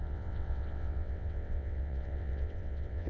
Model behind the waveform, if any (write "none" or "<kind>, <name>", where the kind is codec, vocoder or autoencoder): vocoder, WaveNeXt